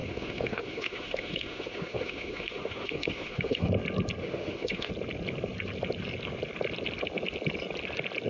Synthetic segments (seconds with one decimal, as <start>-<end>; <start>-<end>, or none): 0.0-3.7; 4.2-4.9